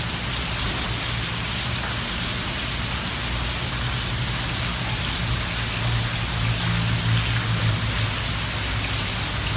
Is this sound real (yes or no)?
yes